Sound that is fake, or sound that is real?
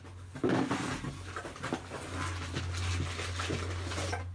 real